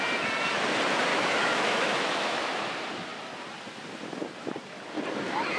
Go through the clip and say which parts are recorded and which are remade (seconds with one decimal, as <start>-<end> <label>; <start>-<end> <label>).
0.0-1.1 recorded; 1.1-2.5 remade; 2.5-5.6 recorded